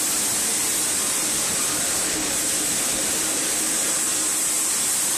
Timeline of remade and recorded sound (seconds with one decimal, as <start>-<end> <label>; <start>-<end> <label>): 0.0-1.2 recorded; 1.2-4.3 remade; 4.3-5.2 recorded

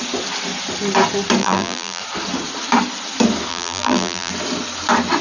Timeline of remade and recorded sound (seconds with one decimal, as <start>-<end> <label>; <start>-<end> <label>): 0.0-1.4 recorded; 1.4-2.0 remade; 2.0-3.5 recorded; 3.5-4.3 remade; 4.3-5.2 recorded